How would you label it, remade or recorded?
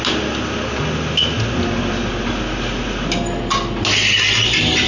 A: recorded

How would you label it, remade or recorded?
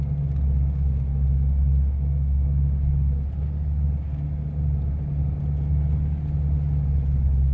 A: recorded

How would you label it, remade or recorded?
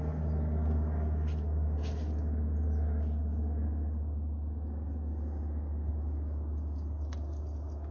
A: recorded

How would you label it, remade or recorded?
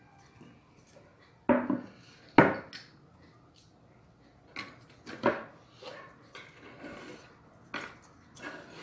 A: recorded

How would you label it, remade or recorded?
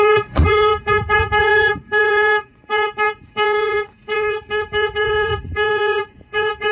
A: remade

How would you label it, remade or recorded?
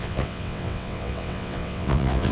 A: remade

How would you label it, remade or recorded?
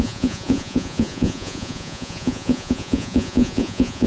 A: remade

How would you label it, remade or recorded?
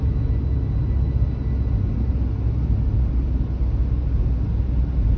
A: recorded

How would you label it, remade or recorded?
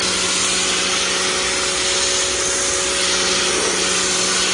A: recorded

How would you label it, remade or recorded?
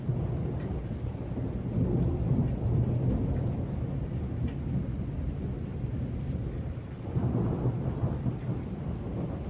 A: recorded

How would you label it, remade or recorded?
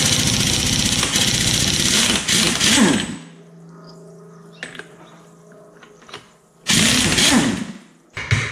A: recorded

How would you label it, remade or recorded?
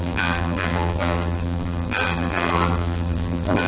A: remade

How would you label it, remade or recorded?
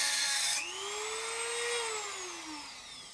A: recorded